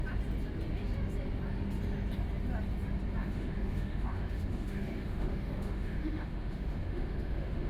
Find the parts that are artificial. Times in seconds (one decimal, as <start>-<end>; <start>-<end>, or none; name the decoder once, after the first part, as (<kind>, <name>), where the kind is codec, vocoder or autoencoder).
3.2-7.7 (autoencoder, DAC-VAE)